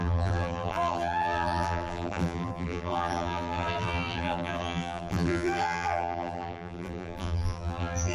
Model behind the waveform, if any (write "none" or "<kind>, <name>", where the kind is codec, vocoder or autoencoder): vocoder, BigVGAN v2